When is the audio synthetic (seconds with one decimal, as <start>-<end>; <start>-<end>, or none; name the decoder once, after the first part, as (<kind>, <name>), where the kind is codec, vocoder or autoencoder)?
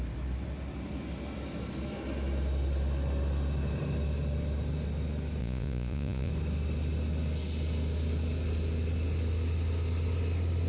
5.4-6.3 (vocoder, Vocos)